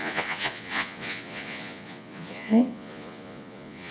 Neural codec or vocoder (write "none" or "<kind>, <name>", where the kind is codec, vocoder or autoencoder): vocoder, Vocos